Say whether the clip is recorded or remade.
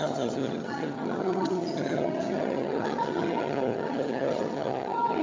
remade